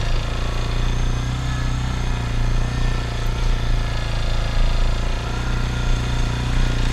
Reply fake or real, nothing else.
real